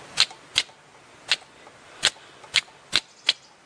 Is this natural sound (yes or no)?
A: yes